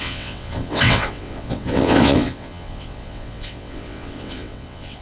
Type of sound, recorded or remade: remade